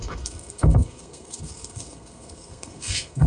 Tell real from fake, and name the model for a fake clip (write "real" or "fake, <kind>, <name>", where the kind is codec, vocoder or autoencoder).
fake, codec, SNAC